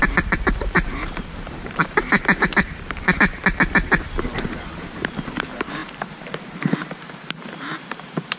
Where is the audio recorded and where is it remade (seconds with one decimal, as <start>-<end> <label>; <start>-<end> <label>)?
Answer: 0.0-3.3 remade; 3.3-4.1 recorded; 4.1-8.4 remade